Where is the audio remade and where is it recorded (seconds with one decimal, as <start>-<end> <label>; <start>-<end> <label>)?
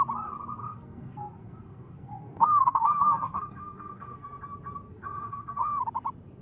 0.0-0.6 recorded; 0.6-4.4 remade; 4.4-4.9 recorded; 4.9-5.8 remade; 5.8-6.4 recorded